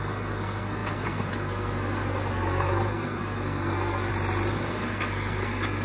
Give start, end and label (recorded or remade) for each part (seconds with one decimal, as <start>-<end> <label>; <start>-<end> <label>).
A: 0.0-4.1 remade; 4.1-4.7 recorded; 4.7-5.8 remade